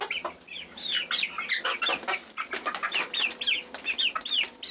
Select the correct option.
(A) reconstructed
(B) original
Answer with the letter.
B